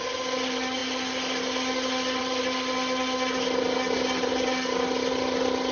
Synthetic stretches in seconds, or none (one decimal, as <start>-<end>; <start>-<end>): none